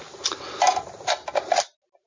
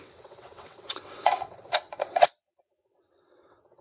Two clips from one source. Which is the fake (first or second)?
second